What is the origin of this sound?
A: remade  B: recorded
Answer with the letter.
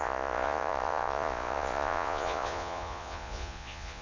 A